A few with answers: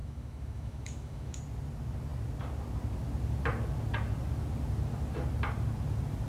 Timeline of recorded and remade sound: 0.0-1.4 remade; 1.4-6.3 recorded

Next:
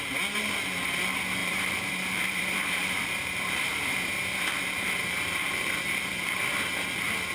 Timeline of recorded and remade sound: 0.0-1.4 recorded; 1.4-5.8 remade; 5.8-7.3 recorded